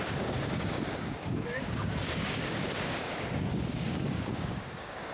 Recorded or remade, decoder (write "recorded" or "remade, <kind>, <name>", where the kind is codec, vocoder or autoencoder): remade, codec, DAC